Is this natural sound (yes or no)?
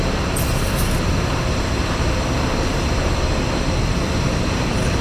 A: no